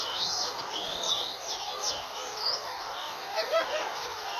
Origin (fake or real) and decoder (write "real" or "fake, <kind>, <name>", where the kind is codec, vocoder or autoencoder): fake, codec, DAC